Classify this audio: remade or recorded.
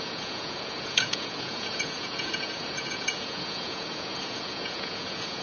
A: remade